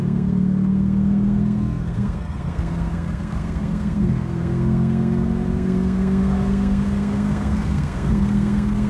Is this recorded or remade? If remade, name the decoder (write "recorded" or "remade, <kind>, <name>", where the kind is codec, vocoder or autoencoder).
remade, codec, SNAC